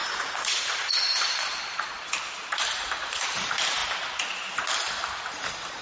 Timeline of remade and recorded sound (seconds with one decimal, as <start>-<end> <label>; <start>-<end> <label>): 0.0-2.0 remade; 2.0-5.8 recorded